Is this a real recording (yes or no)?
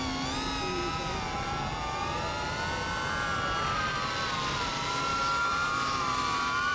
yes